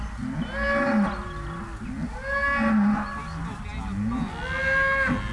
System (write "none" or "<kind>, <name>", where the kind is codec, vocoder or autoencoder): none